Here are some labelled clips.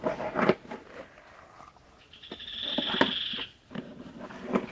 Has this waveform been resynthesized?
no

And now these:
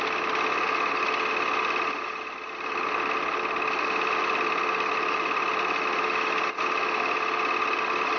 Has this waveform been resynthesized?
no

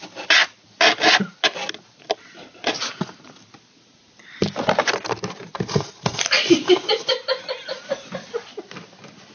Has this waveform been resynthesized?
no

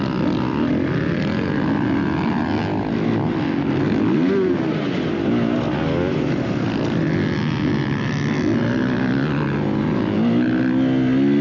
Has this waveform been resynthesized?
no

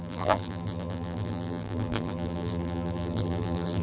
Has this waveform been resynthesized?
yes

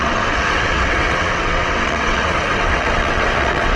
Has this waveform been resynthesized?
yes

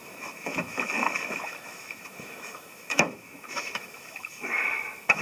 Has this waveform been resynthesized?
yes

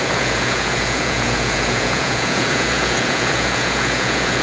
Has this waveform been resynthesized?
yes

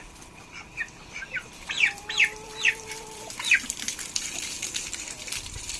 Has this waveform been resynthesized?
yes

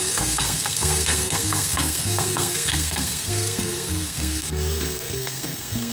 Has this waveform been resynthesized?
yes